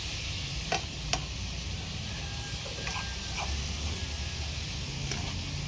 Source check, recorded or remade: recorded